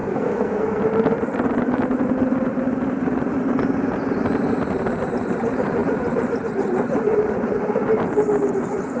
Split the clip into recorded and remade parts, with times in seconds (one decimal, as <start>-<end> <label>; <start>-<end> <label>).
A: 0.0-0.8 remade; 0.8-9.0 recorded